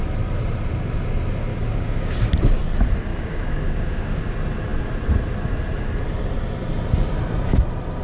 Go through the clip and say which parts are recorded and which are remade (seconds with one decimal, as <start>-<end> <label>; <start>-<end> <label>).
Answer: 0.0-1.5 recorded; 1.5-2.2 remade; 2.2-3.1 recorded; 3.1-4.2 remade; 4.2-8.0 recorded